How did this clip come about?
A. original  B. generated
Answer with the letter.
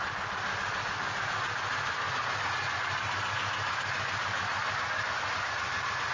A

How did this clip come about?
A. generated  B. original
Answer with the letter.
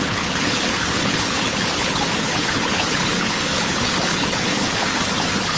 A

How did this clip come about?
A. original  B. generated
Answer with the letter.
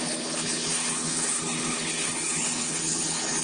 B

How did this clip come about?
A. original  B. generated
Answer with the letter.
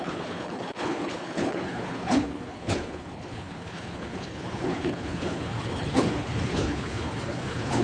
B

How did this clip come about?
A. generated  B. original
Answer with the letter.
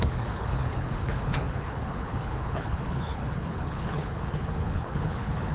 A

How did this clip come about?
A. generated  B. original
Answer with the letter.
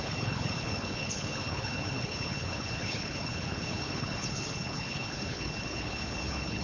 A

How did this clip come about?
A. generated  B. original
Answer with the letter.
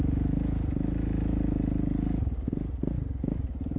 B